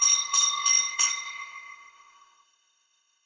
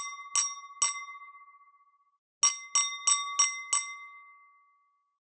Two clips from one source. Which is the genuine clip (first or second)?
second